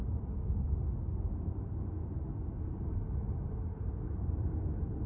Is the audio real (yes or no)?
yes